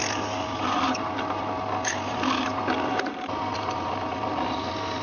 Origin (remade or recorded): recorded